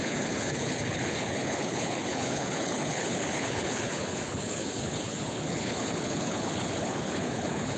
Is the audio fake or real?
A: fake